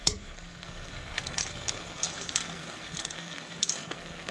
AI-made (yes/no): yes